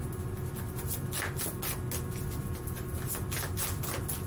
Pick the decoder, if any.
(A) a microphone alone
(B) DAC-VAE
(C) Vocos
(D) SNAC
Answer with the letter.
A